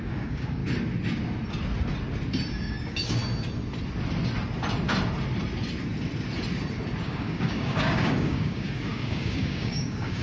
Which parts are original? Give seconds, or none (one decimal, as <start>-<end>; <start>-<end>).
0.6-2.6; 3.2-7.0